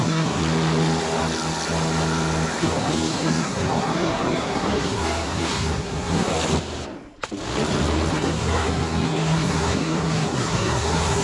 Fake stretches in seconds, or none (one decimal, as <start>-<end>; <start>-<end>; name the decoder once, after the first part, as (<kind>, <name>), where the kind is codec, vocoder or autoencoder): 0.0-0.4 (codec, SNAC); 2.6-6.3; 8.1-11.2